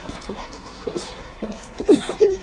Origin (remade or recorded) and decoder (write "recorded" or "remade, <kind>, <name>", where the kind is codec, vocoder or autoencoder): remade, codec, SNAC